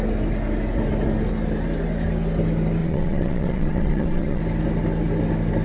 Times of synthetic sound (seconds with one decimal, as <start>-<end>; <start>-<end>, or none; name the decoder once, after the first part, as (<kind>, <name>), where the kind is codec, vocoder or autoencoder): 2.8-4.4 (vocoder, Vocos)

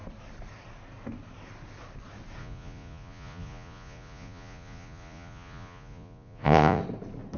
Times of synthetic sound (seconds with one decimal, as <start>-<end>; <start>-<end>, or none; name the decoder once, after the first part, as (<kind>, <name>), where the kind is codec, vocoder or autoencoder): 2.4-6.8 (vocoder, Vocos)

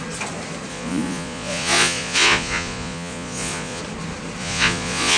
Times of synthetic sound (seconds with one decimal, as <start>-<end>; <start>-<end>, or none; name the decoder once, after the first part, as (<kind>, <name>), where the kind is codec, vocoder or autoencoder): 0.7-3.8 (vocoder, Vocos); 4.4-5.2

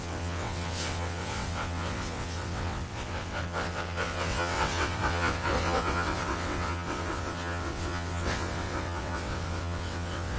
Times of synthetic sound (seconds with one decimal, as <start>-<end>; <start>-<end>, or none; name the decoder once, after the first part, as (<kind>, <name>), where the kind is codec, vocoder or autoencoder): 0.0-10.4 (vocoder, WaveNeXt)

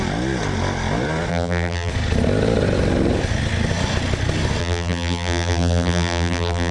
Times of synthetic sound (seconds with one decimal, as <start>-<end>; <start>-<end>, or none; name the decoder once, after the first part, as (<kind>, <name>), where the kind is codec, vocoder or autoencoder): 1.3-1.9 (vocoder, BigVGAN v2); 4.6-6.7

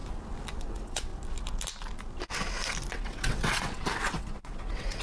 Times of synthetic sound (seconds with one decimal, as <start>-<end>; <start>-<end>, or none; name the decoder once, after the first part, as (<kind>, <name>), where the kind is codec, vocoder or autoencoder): 0.6-1.1 (vocoder, WaveNeXt); 2.9-5.0

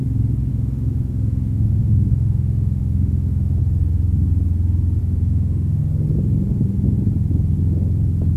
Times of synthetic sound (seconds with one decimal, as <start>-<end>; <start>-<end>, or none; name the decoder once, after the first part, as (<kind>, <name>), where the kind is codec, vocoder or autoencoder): 0.5-3.6 (autoencoder, DAC-VAE); 5.0-5.8